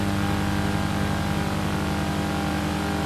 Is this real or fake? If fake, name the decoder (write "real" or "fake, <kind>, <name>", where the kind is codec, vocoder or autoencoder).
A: real